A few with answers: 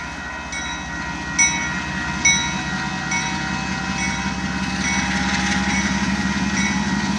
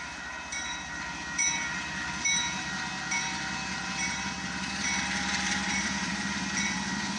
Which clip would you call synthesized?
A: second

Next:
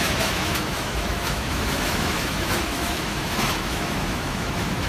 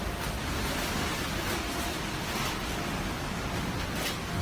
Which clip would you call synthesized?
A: first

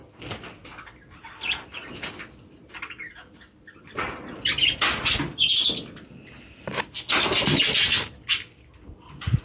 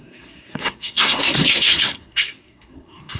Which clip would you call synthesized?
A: second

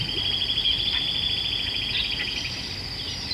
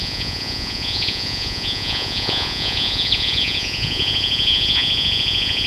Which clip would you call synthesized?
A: second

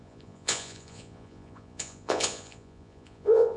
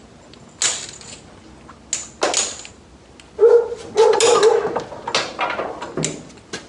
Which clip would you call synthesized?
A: first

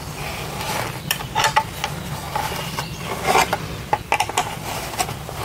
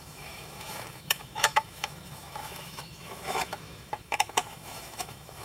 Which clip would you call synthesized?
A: second